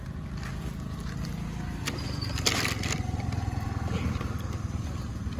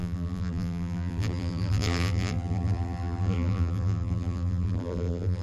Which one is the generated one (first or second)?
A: second